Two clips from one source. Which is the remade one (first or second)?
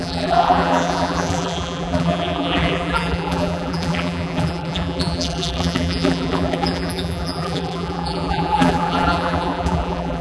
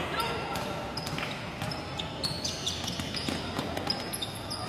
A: first